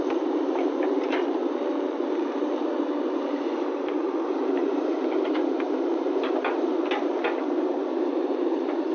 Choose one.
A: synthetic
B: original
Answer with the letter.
A